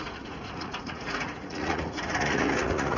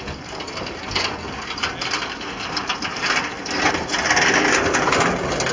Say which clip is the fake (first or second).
first